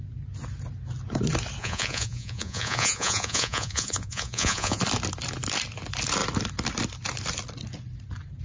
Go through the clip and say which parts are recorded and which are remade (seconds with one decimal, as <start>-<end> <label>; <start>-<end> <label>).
0.0-1.6 recorded; 1.6-4.8 remade; 4.8-8.4 recorded